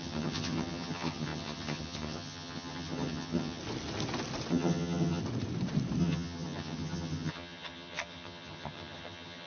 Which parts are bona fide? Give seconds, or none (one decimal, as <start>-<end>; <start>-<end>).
3.6-4.5; 5.2-6.0

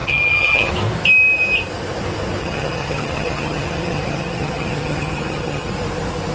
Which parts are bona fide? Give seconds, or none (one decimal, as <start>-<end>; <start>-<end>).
0.7-2.4; 5.7-6.3

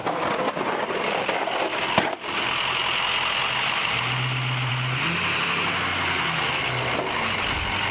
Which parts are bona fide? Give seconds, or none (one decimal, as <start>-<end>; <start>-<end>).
0.0-7.9

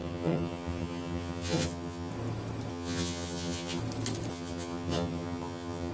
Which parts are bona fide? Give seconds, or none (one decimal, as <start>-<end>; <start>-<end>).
2.1-2.7; 3.8-4.3

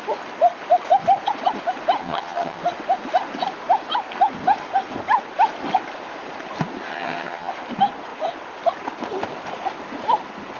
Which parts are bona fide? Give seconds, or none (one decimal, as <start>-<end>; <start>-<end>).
0.0-2.0; 2.6-6.9; 7.5-10.6

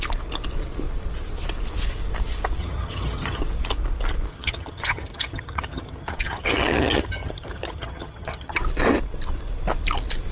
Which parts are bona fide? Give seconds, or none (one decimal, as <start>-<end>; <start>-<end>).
0.0-2.6; 3.4-4.3; 8.6-10.3

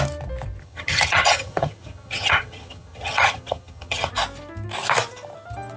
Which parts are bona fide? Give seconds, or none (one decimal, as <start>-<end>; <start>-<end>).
0.0-0.6; 4.1-5.8

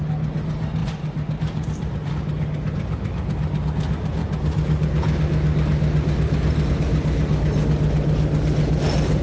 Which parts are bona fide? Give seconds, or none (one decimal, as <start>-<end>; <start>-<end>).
0.0-9.2